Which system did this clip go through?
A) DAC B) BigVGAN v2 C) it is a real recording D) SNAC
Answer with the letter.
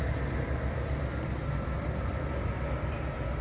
C